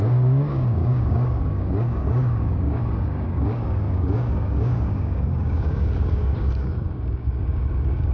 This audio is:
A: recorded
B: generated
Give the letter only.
B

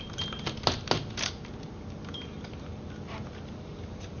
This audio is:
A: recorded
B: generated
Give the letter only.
A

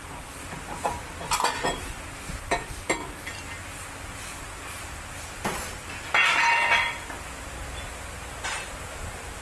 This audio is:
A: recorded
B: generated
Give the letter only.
A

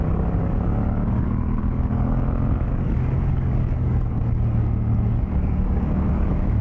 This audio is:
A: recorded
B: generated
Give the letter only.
B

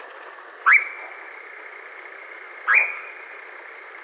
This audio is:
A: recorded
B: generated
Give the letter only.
A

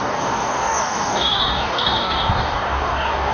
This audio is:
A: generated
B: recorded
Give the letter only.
A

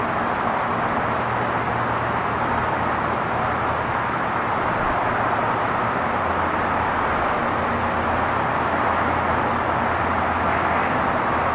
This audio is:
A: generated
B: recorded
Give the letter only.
B